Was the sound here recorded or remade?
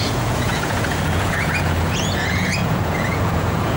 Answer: remade